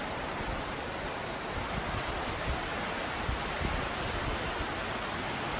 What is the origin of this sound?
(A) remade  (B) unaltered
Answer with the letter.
B